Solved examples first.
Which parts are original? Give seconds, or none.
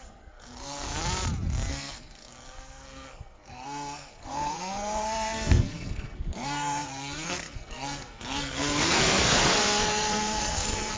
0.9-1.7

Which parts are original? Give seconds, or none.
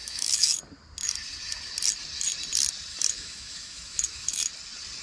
0.6-2.9; 4.5-5.0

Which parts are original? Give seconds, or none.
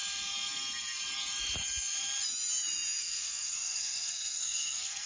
0.0-3.0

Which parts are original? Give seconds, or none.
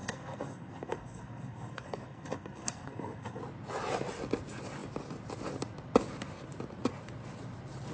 3.4-7.9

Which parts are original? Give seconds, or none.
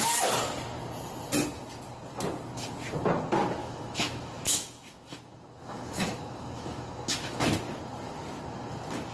0.0-3.6; 7.5-9.1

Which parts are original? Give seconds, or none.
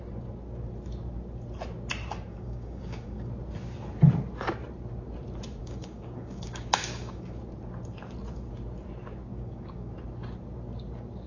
0.0-2.3; 3.3-5.6; 7.4-9.3; 9.9-11.3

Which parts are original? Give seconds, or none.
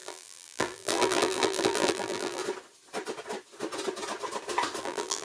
2.4-4.8